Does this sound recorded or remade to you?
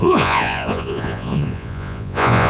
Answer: remade